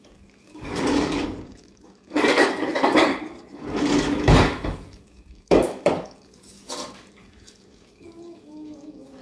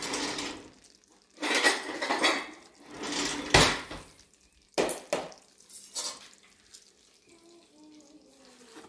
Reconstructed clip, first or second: first